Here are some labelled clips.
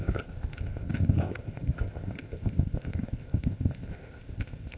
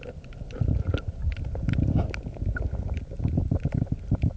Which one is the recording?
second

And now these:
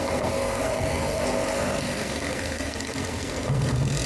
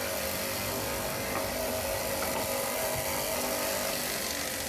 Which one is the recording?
second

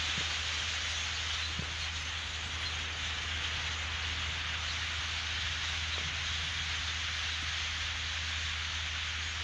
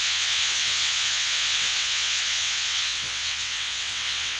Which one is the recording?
first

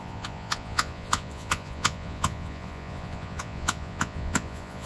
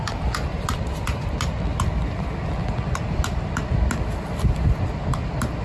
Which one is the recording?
second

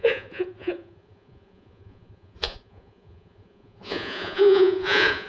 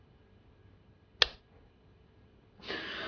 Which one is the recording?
second